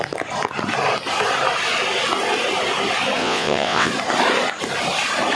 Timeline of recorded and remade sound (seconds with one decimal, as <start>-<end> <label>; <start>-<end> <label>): 0.0-3.2 recorded; 3.2-3.9 remade; 3.9-5.3 recorded

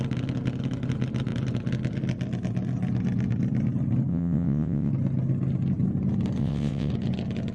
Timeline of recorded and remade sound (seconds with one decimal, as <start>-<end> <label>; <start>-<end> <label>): 0.0-4.1 recorded; 4.1-4.9 remade; 4.9-6.4 recorded; 6.4-6.9 remade; 6.9-7.5 recorded

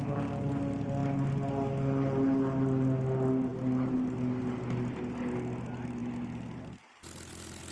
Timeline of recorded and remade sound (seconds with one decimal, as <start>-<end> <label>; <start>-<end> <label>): 0.0-7.7 recorded

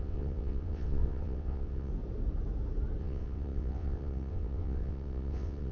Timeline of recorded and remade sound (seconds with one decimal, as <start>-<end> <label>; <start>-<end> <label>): 0.0-1.9 remade; 1.9-3.0 recorded; 3.0-5.7 remade

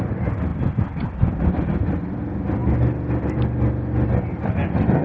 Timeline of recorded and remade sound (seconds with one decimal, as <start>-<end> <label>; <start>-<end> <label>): 0.0-5.0 recorded

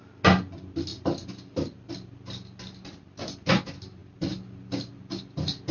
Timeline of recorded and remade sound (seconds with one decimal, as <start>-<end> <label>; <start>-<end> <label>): 0.0-5.7 recorded